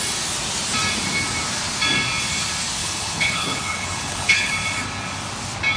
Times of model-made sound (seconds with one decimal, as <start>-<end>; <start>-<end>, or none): 2.8-4.5